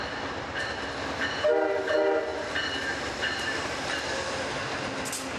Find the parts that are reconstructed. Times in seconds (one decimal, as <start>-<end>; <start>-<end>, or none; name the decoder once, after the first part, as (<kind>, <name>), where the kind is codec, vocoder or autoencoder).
2.3-4.0 (vocoder, BigVGAN v2)